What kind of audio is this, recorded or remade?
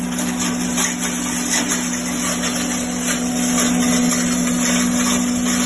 recorded